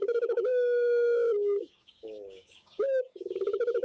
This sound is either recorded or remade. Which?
remade